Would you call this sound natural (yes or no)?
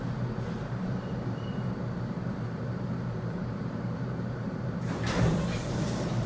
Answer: no